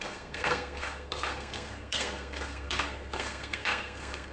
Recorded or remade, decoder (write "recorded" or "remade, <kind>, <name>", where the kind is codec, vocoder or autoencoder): remade, codec, SNAC